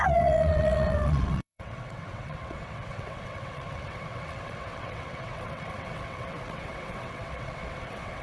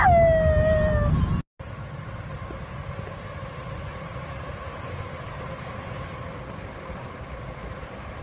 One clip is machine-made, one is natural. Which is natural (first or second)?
second